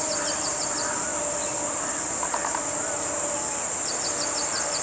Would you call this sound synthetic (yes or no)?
no